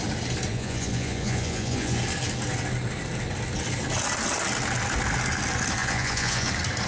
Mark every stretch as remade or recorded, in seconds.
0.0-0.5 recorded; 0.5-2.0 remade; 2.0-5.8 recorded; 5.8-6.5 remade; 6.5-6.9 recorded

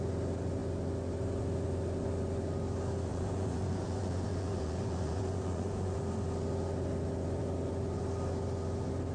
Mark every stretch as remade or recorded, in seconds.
0.0-3.1 recorded; 3.1-6.0 remade; 6.0-9.1 recorded

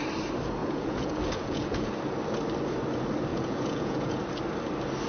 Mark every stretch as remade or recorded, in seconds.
0.0-0.6 recorded; 0.6-1.9 remade; 1.9-3.3 recorded; 3.3-4.2 remade; 4.2-5.1 recorded